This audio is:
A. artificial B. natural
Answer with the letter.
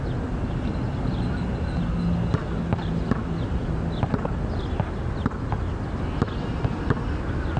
B